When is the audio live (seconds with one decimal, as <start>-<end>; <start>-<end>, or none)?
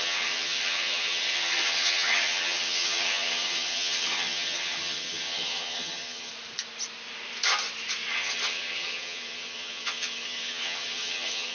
6.3-8.1